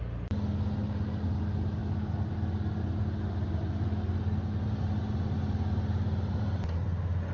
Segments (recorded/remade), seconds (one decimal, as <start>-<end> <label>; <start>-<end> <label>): 0.0-7.3 recorded